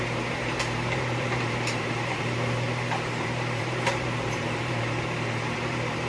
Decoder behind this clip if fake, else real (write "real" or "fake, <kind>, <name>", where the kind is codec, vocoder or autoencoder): fake, vocoder, BigVGAN v2